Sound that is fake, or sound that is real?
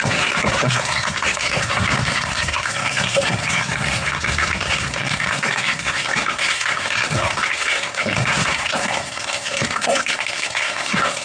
fake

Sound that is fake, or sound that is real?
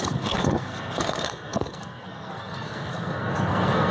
fake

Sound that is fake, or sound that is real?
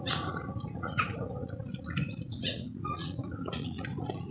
fake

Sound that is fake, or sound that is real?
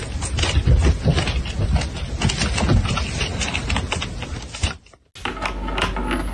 real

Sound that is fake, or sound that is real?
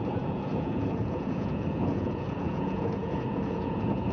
fake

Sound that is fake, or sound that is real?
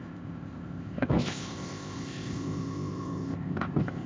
fake